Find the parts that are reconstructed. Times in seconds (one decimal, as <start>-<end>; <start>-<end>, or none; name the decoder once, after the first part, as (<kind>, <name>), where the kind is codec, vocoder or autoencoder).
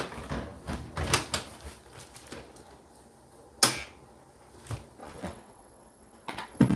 5.0-6.8 (vocoder, WaveNeXt)